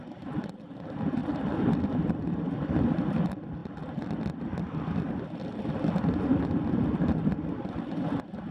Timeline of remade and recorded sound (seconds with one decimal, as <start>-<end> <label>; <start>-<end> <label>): 0.0-8.5 recorded

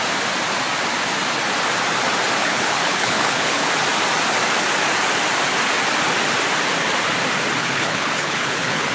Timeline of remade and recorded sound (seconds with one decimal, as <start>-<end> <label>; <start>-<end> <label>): 0.0-2.4 recorded; 2.4-3.7 remade; 3.7-7.6 recorded; 7.6-8.9 remade

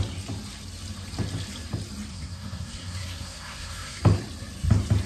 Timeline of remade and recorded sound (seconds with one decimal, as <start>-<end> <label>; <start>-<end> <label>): 0.0-2.1 recorded; 2.1-4.0 remade; 4.0-5.1 recorded

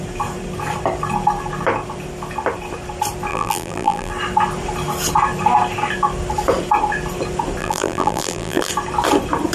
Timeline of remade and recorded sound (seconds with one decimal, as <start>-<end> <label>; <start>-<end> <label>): 0.0-3.3 recorded; 3.3-4.1 remade; 4.1-7.6 recorded; 7.6-8.7 remade; 8.7-9.5 recorded

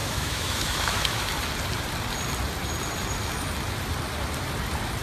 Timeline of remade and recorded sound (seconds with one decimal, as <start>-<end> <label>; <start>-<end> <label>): 0.0-1.3 remade; 1.3-5.0 recorded

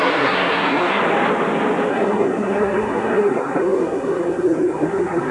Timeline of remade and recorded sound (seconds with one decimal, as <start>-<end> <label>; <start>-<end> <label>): 0.0-1.0 remade; 1.0-1.9 recorded; 1.9-5.3 remade